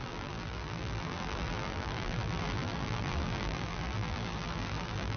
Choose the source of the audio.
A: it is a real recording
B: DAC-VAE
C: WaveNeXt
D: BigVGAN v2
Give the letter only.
D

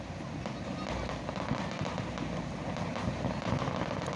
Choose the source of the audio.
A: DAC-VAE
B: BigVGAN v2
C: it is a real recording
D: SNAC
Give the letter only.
C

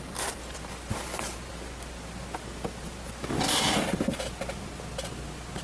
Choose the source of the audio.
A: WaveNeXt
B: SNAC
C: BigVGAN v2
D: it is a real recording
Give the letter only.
D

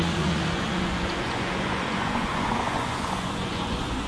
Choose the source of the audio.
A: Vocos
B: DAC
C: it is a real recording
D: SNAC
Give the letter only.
A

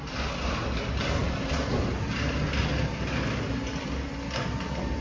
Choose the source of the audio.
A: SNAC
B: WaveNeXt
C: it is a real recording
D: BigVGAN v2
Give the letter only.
C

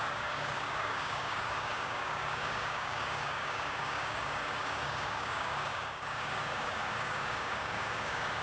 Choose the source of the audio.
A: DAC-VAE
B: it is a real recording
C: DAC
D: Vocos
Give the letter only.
C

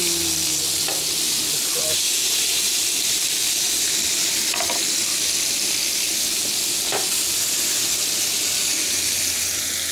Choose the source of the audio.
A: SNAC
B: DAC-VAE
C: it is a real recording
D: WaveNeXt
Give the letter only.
C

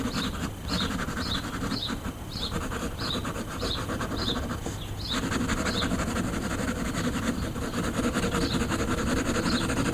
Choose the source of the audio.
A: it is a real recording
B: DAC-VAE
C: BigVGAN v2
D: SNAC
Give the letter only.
A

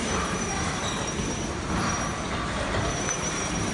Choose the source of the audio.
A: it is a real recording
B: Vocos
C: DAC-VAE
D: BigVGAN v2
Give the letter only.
D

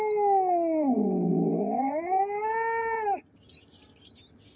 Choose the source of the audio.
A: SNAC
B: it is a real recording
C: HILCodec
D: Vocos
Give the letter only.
B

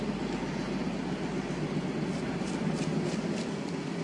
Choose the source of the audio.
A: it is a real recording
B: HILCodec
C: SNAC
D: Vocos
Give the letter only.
A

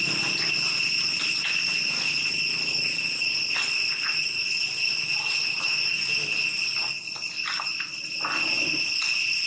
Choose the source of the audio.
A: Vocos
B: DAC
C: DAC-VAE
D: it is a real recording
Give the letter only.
D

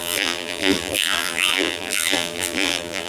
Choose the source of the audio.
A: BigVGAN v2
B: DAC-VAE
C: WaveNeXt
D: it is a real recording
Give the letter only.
A